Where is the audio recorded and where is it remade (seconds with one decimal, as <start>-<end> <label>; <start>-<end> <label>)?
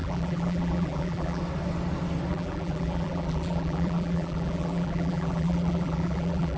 0.0-1.4 remade; 1.4-2.3 recorded; 2.3-6.6 remade